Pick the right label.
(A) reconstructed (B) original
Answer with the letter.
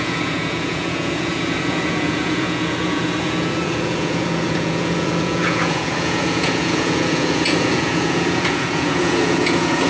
A